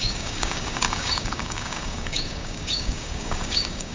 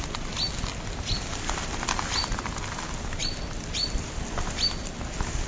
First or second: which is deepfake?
first